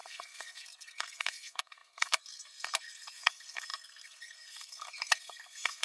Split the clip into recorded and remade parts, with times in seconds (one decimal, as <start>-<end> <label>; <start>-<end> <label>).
0.0-5.8 remade